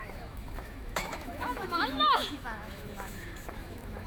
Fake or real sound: fake